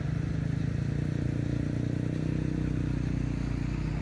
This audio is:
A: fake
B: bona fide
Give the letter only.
B